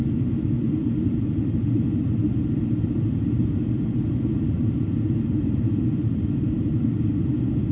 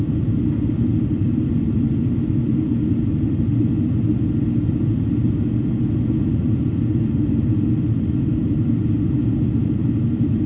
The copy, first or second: first